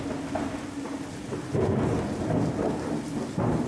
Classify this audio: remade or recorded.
recorded